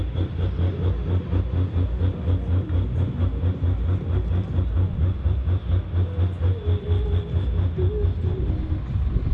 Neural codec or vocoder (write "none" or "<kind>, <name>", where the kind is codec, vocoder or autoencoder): none